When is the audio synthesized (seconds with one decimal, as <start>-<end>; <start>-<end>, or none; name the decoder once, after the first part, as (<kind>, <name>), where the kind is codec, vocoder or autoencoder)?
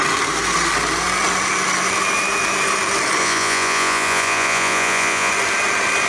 3.2-5.3 (vocoder, Vocos)